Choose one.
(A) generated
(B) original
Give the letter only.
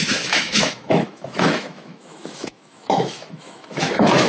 A